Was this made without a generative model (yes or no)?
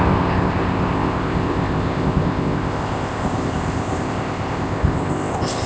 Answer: no